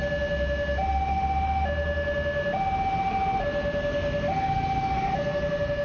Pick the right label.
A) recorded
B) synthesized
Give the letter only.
A